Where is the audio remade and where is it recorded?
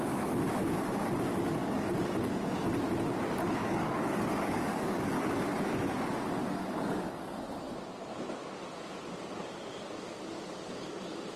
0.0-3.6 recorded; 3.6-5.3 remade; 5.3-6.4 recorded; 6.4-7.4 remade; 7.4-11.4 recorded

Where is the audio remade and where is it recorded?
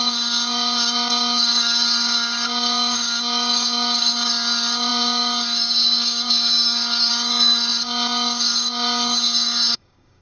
0.0-10.2 remade